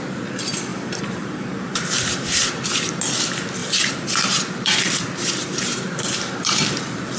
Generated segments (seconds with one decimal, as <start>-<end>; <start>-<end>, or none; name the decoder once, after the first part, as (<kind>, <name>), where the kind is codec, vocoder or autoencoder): 0.7-2.9 (vocoder, BigVGAN v2); 3.6-6.3